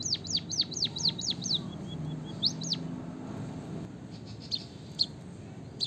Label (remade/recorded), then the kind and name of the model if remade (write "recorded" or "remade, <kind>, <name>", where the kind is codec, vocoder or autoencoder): recorded